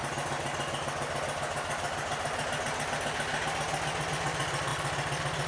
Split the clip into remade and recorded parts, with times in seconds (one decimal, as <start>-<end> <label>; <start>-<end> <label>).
0.0-5.5 recorded